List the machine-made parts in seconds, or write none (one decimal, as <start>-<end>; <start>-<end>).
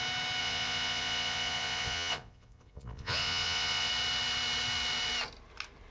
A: 0.4-3.9